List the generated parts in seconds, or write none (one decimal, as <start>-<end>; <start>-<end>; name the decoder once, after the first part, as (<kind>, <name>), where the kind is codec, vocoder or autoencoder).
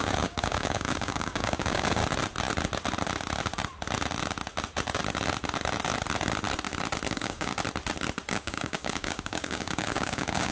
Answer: 0.0-2.0 (codec, DAC); 7.1-7.5; 8.3-10.5